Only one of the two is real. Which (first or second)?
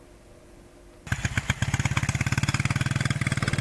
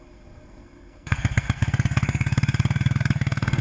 first